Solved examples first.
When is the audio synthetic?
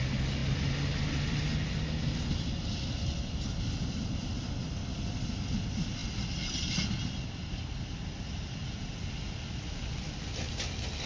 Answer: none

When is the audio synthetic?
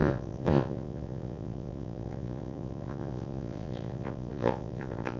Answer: 0.0-5.2 (vocoder, Vocos)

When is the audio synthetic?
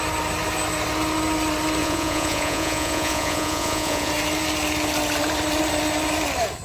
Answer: 1.8-4.1 (vocoder, Vocos)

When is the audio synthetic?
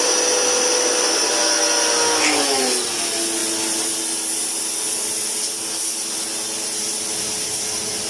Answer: none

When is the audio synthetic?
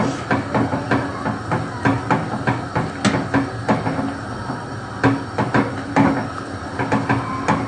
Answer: none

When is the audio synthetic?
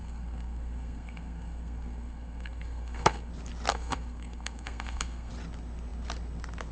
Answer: 0.0-3.3 (codec, SNAC); 3.7-5.3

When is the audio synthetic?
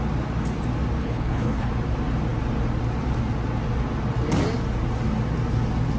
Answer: 1.0-1.7 (codec, HILCodec)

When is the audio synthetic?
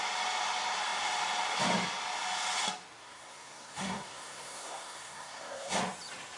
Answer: 3.0-5.8 (codec, SNAC)